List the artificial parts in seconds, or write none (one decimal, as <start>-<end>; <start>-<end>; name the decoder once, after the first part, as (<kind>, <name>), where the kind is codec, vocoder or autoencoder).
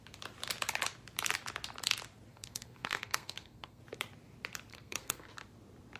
2.3-3.8 (codec, SNAC); 4.7-5.3